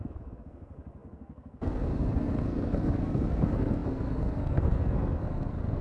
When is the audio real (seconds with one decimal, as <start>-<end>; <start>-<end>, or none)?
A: none